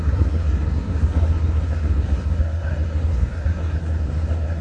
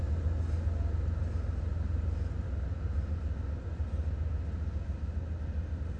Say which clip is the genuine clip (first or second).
second